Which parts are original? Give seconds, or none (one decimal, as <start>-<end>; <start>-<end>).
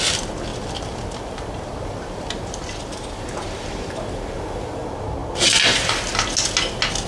0.0-0.5; 3.9-5.2; 6.0-7.1